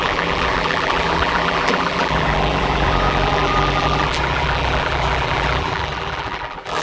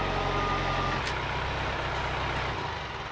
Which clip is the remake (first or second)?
first